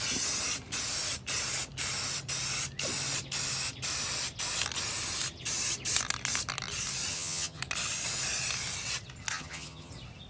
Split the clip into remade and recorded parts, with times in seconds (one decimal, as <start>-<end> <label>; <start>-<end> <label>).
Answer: 0.0-7.1 recorded; 7.1-7.6 remade; 7.6-9.3 recorded; 9.3-9.9 remade; 9.9-10.3 recorded